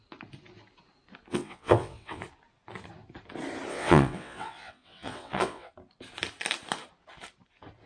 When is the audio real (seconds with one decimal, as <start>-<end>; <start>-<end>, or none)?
0.0-1.3; 2.2-3.7; 5.7-7.9